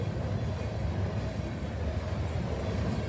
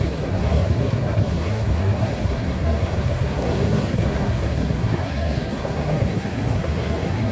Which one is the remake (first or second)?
second